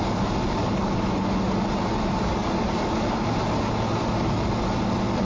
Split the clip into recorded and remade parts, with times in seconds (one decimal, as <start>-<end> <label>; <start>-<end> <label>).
0.0-5.2 recorded